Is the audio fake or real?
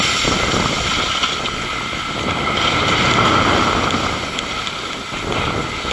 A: real